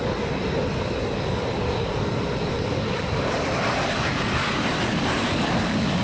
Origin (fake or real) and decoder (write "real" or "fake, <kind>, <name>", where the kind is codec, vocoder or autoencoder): real